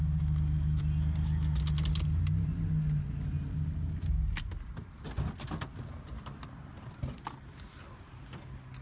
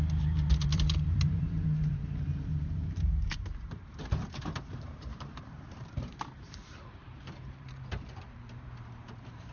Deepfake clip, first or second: second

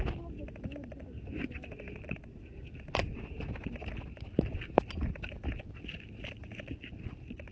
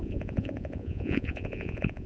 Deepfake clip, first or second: second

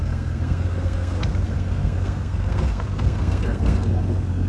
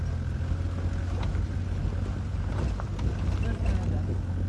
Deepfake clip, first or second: first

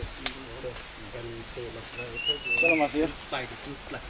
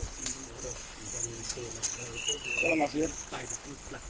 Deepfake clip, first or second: second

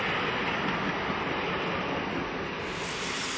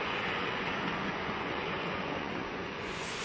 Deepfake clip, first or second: second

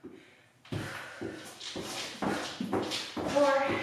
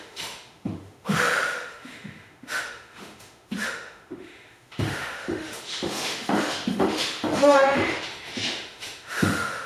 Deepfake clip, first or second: second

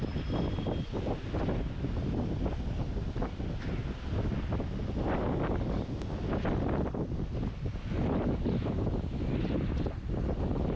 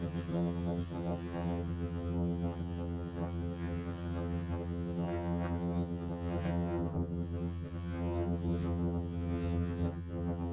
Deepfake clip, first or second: second